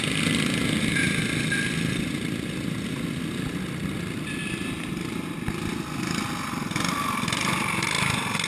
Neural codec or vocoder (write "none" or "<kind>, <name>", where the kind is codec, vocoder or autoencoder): none